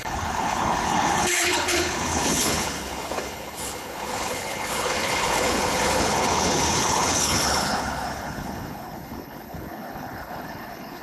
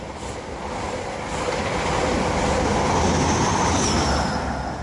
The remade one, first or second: first